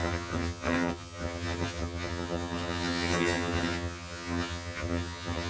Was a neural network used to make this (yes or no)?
yes